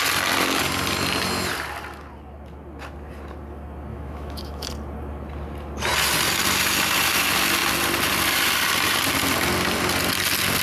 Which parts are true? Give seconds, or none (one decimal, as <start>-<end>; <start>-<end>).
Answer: 0.0-3.9; 4.7-10.6